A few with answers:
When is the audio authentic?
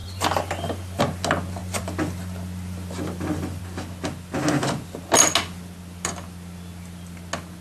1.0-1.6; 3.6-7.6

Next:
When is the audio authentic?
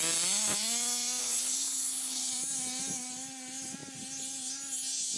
0.0-1.2; 2.3-5.2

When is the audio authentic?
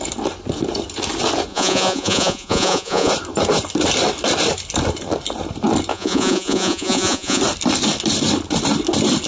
0.0-1.5; 3.1-5.9; 7.4-9.3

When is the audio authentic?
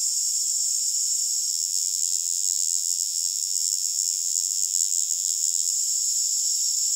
0.0-1.5; 5.7-7.0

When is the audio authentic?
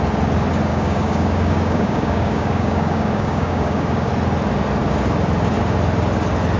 0.0-0.7; 4.1-6.6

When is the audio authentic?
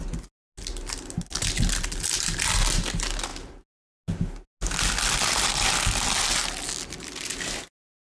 0.0-8.2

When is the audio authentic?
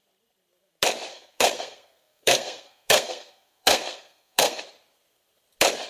0.0-1.1; 4.6-5.9